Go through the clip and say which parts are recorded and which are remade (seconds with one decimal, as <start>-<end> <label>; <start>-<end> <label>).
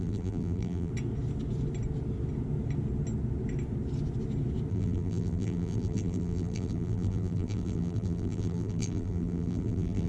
0.0-0.9 remade; 0.9-4.7 recorded; 4.7-10.1 remade